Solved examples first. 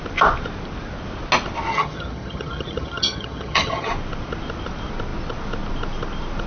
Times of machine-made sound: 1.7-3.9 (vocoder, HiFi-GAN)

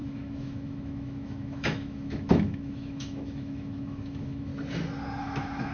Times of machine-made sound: 0.0-4.5 (autoencoder, DAC-VAE); 5.2-5.7

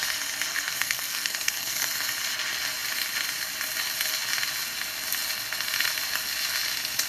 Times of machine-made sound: 0.5-1.9 (codec, SNAC)

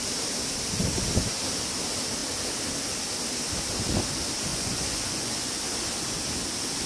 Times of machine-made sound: 4.5-5.5 (vocoder, Vocos)

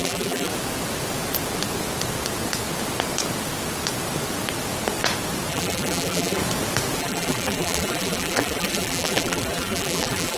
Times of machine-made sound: 0.0-0.5 (vocoder, BigVGAN v2); 5.5-6.4; 7.0-10.4

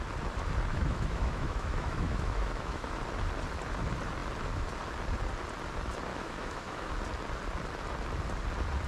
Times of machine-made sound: 0.7-3.0 (autoencoder, DAC-VAE); 6.1-6.9